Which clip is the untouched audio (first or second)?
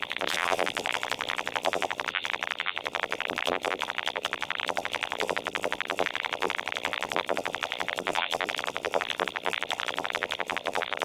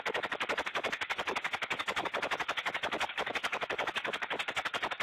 second